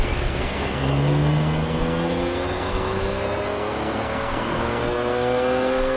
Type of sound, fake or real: fake